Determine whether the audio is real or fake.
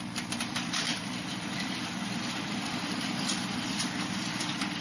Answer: fake